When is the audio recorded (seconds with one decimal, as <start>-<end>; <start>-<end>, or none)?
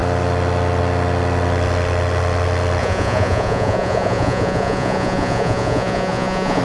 0.0-2.8